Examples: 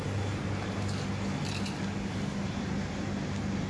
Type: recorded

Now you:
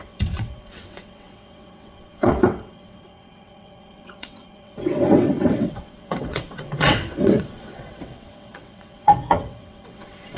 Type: remade